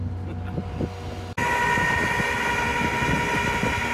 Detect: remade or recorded recorded